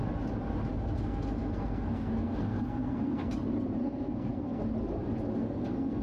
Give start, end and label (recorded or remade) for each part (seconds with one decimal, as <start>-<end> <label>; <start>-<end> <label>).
0.0-0.7 recorded; 0.7-3.3 remade; 3.3-3.8 recorded; 3.8-4.6 remade; 4.6-5.4 recorded; 5.4-6.0 remade